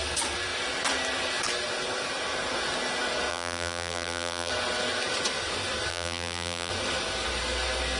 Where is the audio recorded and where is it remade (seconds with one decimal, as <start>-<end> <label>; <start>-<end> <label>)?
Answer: 0.0-3.3 recorded; 3.3-4.5 remade; 4.5-5.9 recorded; 5.9-6.7 remade; 6.7-8.0 recorded